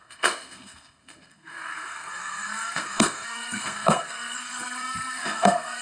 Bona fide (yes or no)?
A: no